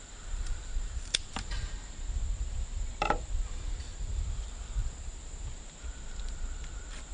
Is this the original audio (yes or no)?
no